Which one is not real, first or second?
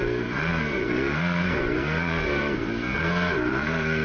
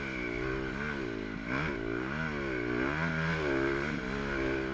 first